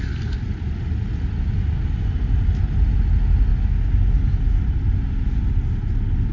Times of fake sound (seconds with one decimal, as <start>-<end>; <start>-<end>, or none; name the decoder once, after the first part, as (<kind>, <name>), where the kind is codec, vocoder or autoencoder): none